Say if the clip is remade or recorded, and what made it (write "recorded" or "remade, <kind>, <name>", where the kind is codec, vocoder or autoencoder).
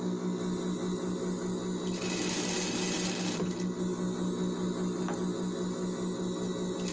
recorded